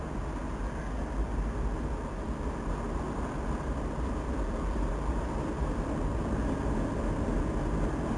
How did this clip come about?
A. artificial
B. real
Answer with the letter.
B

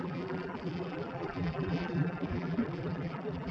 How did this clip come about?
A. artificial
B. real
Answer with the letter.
A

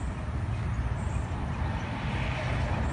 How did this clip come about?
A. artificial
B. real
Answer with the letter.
B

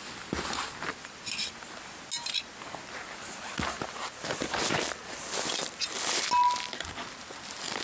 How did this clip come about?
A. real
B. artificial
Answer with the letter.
A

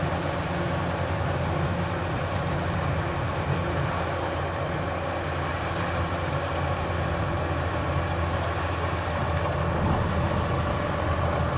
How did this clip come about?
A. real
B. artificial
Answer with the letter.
A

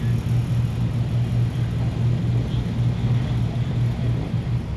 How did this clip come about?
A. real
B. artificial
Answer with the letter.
A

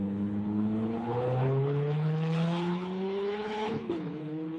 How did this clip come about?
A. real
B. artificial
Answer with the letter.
B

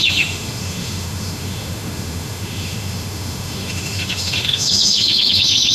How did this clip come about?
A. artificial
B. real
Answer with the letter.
A